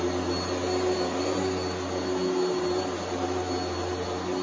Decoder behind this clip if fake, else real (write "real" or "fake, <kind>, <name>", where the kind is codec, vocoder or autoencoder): real